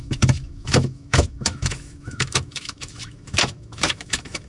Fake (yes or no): yes